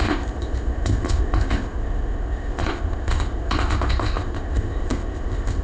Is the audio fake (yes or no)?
yes